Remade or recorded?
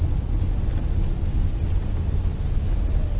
recorded